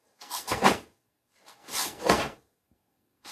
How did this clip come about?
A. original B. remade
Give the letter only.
B